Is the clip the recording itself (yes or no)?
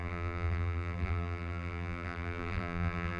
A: no